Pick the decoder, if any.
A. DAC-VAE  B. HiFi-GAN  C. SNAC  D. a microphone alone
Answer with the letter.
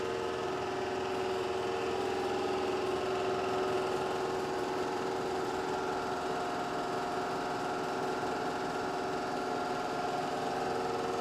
D